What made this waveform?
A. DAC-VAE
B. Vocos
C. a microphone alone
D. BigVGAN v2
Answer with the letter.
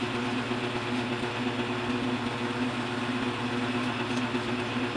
C